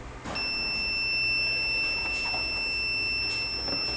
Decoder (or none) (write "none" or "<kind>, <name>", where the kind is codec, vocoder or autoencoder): none